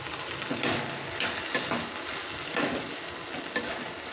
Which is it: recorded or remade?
recorded